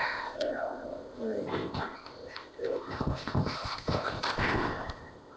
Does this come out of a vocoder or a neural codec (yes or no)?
yes